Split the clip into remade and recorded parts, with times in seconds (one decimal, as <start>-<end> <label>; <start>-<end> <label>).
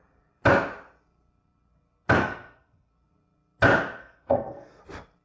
0.0-2.2 recorded; 2.2-2.9 remade; 2.9-4.0 recorded; 4.0-4.8 remade; 4.8-5.2 recorded